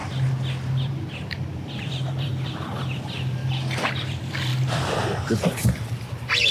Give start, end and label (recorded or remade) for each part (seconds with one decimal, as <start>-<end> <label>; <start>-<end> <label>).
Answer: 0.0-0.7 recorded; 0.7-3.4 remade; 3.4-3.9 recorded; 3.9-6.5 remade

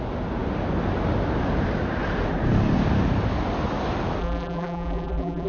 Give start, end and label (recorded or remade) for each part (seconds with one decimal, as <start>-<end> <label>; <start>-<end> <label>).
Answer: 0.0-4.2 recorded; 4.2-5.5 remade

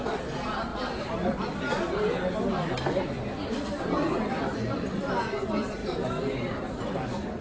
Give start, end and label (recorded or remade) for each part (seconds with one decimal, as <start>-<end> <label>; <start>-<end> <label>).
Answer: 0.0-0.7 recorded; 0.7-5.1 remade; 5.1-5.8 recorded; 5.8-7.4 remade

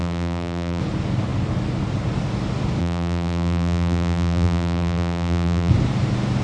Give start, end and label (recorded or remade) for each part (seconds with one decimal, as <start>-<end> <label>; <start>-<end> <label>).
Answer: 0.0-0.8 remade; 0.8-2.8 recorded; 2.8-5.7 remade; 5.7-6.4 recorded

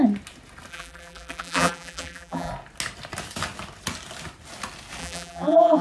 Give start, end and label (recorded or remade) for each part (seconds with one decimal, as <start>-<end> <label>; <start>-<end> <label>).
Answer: 0.0-0.7 recorded; 0.7-2.5 remade; 2.5-5.0 recorded; 5.0-5.8 remade

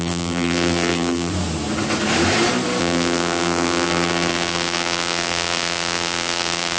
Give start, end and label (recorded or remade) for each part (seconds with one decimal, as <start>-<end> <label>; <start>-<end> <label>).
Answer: 0.0-1.3 remade; 1.3-2.8 recorded; 2.8-6.8 remade